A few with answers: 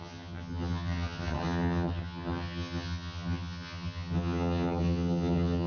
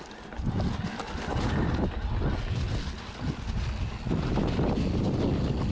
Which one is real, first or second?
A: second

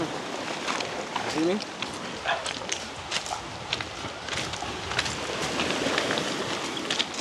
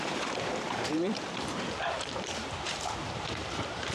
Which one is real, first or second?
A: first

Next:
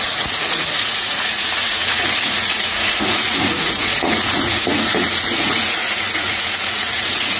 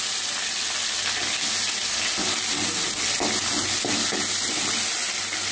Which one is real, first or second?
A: second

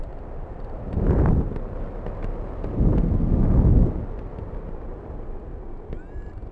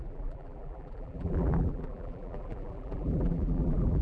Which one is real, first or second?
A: first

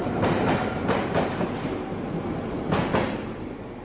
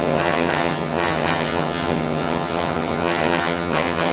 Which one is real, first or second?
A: first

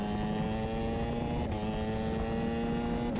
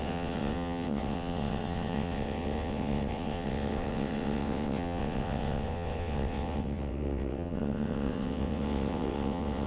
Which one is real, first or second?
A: first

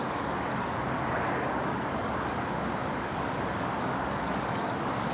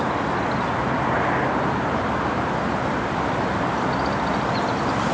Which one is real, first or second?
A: second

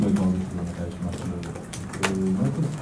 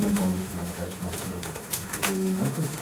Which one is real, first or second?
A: first